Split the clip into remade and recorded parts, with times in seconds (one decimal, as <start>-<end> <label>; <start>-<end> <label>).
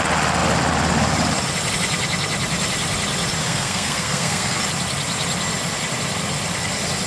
0.0-3.4 recorded; 3.4-4.6 remade; 4.6-7.1 recorded